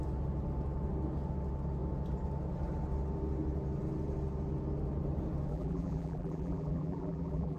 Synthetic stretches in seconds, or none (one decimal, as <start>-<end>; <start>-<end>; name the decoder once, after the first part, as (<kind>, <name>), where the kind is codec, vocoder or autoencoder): 5.5-7.6 (vocoder, BigVGAN v2)